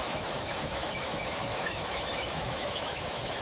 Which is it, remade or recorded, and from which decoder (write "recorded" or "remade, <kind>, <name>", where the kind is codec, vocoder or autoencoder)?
remade, autoencoder, DAC-VAE